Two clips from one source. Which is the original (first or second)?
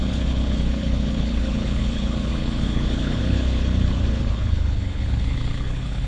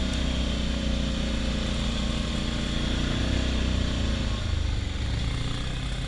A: second